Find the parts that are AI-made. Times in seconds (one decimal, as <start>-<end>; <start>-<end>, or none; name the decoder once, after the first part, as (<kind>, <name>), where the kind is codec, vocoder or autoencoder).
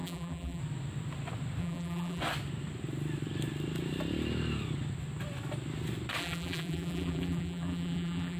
0.0-0.6 (vocoder, BigVGAN v2); 1.6-2.2; 6.2-8.4